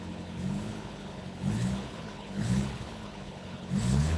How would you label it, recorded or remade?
remade